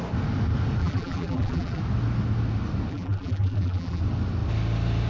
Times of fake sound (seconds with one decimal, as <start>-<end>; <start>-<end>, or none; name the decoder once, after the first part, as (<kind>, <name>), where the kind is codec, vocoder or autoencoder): 0.8-1.8 (vocoder, BigVGAN v2); 2.9-4.0